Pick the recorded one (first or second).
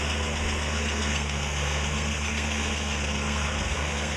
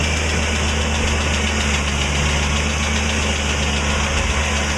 second